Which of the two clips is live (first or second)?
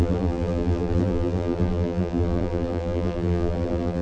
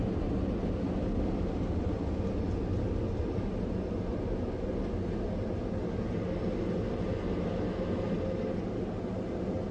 second